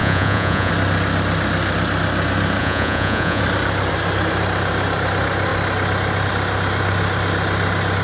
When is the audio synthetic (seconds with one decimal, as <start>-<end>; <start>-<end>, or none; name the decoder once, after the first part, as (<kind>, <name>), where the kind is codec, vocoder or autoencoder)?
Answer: 0.0-0.7 (vocoder, Vocos); 2.6-3.4